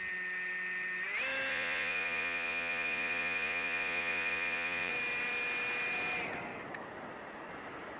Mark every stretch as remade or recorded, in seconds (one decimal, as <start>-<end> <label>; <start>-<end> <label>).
0.0-1.5 recorded; 1.5-4.9 remade; 4.9-8.0 recorded